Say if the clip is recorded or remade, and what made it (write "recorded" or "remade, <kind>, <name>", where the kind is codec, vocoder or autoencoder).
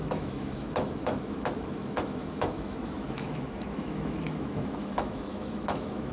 remade, autoencoder, DAC-VAE